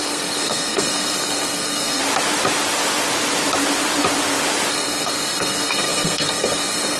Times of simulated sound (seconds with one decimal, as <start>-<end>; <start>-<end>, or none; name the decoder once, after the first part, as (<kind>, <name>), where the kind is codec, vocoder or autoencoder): 0.0-2.0 (codec, SNAC); 4.7-7.0